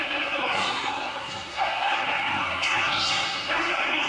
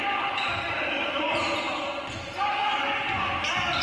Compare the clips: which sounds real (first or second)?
second